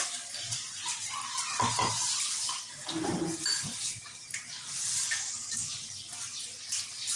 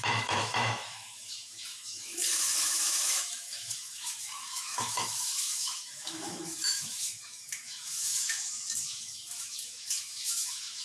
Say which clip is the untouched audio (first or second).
first